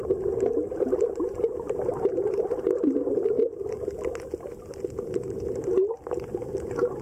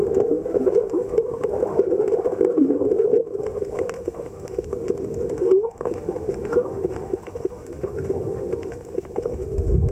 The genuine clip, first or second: first